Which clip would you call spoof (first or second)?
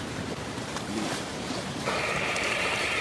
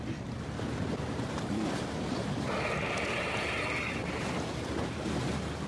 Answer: first